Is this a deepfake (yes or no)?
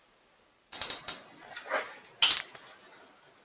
no